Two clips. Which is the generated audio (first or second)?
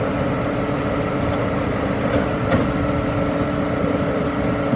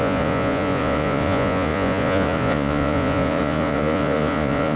second